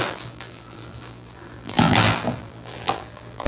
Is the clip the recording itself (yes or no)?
no